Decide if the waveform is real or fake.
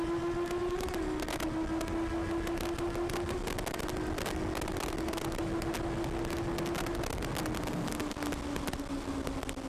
real